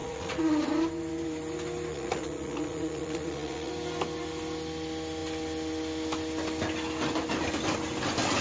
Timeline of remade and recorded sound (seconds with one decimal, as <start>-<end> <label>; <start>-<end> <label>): 0.0-0.7 remade; 0.7-1.9 recorded; 1.9-3.7 remade; 3.7-8.4 recorded